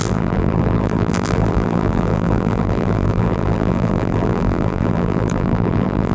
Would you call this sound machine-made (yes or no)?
yes